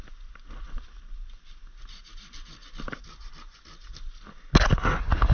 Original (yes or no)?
yes